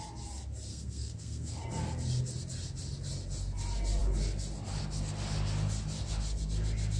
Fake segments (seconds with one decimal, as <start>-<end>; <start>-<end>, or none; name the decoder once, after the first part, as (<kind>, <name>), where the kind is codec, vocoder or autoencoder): 0.7-1.6 (codec, SNAC)